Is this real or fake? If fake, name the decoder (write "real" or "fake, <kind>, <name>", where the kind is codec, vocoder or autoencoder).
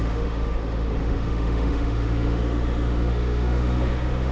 fake, autoencoder, DAC-VAE